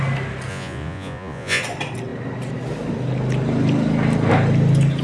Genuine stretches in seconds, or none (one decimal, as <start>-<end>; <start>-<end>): 0.0-0.5; 1.6-5.0